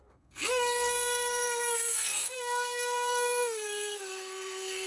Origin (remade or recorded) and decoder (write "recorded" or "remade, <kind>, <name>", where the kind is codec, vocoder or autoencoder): remade, codec, SNAC